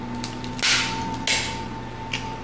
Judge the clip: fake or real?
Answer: real